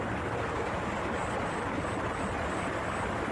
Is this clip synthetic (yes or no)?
no